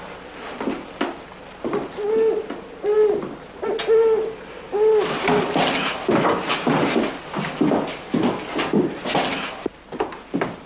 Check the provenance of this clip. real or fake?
real